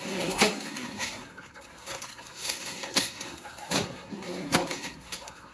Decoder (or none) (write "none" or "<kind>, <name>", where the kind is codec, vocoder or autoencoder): codec, SNAC